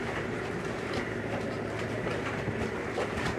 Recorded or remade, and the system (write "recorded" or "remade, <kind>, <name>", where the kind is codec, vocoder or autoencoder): remade, vocoder, BigVGAN v2